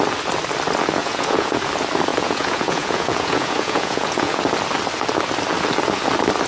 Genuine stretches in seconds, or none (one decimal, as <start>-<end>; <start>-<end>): 0.0-1.0; 1.6-2.1; 4.4-6.5